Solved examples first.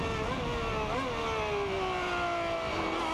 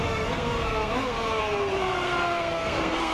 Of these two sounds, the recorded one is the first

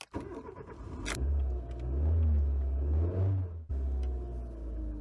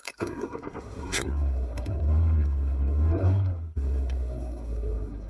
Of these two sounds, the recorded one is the first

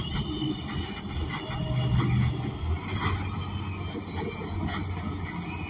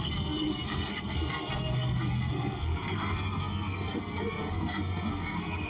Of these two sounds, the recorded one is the first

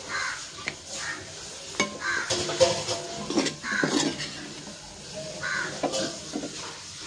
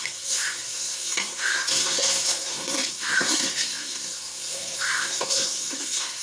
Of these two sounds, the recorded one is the first